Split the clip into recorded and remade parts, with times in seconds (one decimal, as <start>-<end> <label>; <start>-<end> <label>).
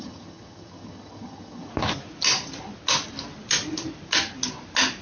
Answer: 0.0-1.7 remade; 1.7-5.0 recorded